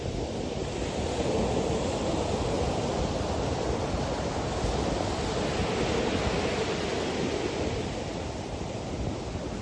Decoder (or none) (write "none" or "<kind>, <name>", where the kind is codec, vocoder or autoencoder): none